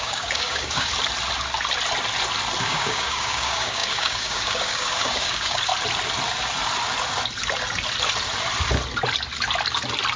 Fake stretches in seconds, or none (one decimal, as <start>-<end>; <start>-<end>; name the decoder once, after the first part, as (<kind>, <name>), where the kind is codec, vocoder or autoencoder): 0.0-0.9 (codec, DAC); 2.6-5.7